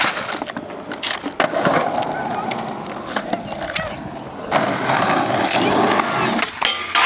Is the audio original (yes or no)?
yes